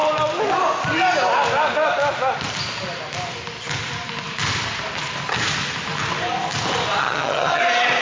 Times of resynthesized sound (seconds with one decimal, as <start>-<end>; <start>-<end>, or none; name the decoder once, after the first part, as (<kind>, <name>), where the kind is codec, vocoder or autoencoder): 7.0-7.6 (vocoder, HiFi-GAN)